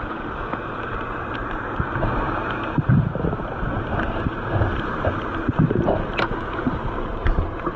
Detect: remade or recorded remade